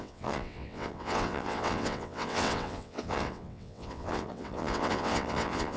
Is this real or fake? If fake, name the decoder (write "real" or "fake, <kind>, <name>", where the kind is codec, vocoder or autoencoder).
fake, vocoder, WaveNeXt